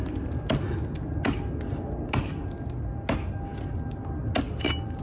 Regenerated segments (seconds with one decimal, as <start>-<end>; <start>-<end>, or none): none